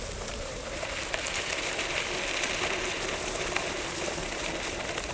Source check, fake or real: real